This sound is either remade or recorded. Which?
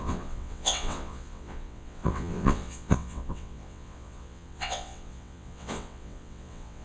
remade